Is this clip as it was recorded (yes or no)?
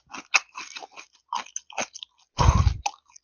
yes